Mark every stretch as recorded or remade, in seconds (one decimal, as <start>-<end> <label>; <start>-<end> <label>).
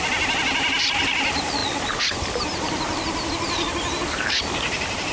0.0-5.1 recorded